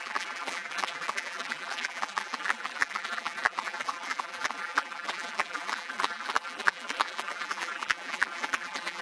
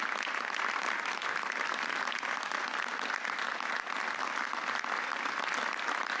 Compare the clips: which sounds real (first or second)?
second